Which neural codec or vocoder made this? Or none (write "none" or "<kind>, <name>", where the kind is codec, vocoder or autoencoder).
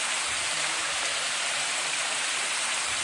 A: vocoder, BigVGAN v2